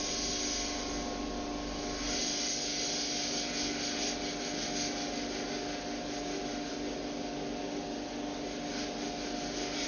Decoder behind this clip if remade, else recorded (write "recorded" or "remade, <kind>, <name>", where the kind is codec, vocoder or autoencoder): recorded